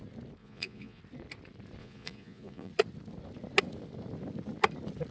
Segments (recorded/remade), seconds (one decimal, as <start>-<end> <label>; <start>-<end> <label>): 0.0-0.4 recorded; 0.4-1.0 remade; 1.0-1.8 recorded; 1.8-2.7 remade; 2.7-5.1 recorded